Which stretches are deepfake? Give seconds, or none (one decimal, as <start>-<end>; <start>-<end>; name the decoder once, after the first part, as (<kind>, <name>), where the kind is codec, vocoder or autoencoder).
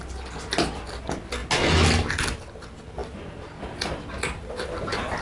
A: none